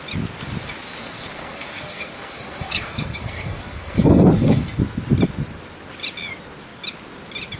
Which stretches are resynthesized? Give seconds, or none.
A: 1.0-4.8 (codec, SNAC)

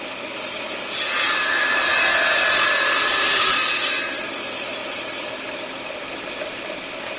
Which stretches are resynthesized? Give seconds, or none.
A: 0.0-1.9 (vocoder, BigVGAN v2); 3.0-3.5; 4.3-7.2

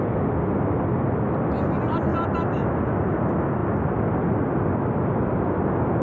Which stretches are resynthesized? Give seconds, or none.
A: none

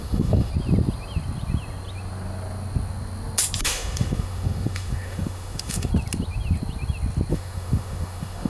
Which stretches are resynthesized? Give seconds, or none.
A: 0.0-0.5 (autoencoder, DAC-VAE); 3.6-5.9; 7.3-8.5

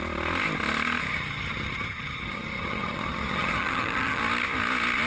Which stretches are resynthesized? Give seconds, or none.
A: 1.1-4.2 (vocoder, HiFi-GAN)